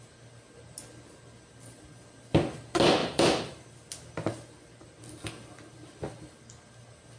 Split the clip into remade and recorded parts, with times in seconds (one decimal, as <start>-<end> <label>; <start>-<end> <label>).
0.0-7.2 recorded